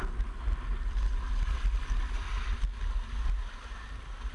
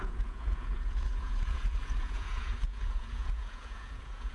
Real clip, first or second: first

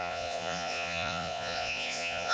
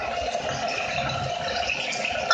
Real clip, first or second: second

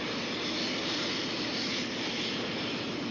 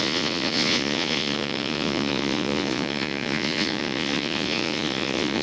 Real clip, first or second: first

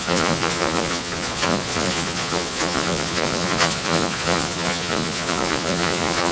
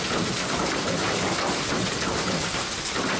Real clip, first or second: second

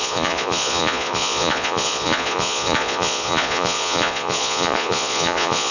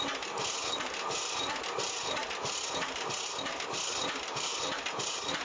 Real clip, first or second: second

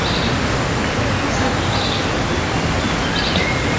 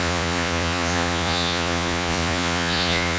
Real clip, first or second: first